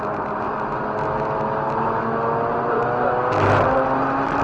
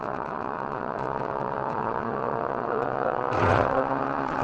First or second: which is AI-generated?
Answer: second